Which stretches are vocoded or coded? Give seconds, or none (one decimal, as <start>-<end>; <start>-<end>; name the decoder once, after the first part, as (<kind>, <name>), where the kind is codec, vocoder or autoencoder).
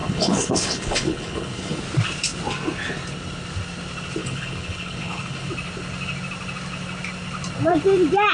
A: 0.0-1.8 (codec, HILCodec); 4.2-5.5